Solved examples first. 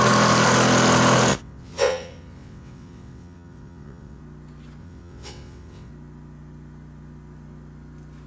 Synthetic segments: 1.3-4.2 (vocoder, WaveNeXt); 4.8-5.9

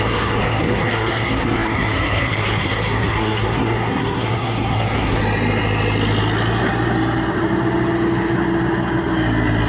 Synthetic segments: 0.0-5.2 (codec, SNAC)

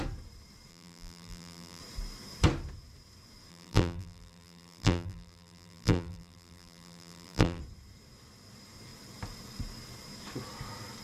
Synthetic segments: 0.7-1.8 (vocoder, BigVGAN v2); 3.5-7.6

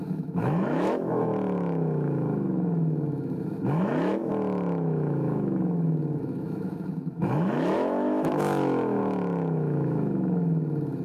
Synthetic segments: 0.0-11.0 (autoencoder, DAC-VAE)

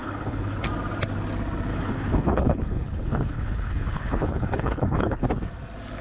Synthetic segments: 0.0-0.6 (codec, HILCodec); 1.7-5.3